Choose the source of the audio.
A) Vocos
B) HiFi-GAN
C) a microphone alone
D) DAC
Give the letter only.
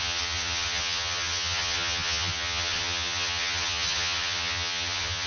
B